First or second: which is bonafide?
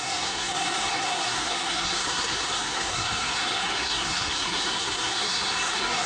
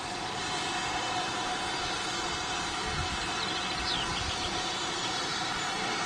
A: second